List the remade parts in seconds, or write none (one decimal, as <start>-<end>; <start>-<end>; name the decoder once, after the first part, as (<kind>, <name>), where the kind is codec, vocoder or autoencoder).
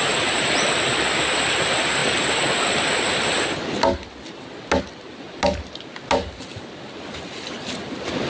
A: none